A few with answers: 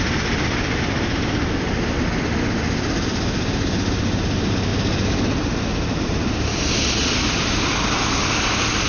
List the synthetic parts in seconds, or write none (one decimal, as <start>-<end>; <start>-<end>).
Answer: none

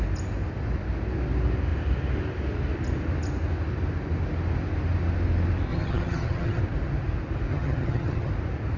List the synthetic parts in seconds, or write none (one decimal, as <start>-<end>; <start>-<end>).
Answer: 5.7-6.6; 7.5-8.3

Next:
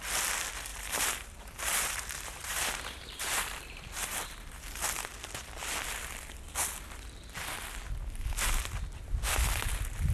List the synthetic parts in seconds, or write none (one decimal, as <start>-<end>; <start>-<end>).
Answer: 0.7-5.0